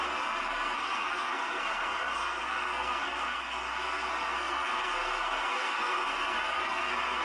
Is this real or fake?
fake